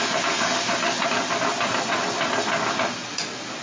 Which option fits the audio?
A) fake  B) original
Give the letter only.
B